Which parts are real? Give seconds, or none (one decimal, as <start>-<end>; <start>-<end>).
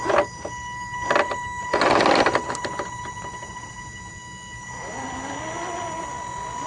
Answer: 0.0-6.7